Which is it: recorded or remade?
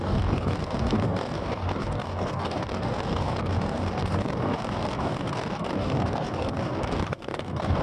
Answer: remade